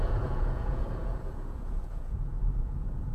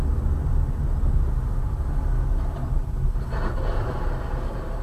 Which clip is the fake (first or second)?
first